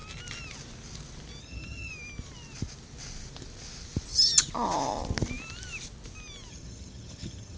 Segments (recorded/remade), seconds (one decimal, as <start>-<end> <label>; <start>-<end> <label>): 0.0-1.4 recorded; 1.4-1.9 remade; 1.9-6.5 recorded; 6.5-7.6 remade